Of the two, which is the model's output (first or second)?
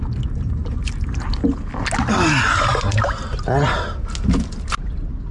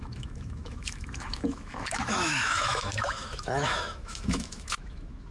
second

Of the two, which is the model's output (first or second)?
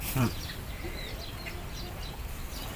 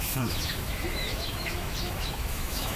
second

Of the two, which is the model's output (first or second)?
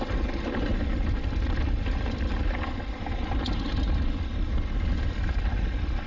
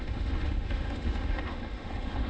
second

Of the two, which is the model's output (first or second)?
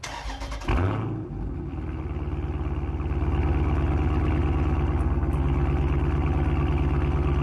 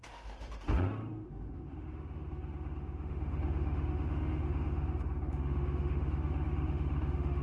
second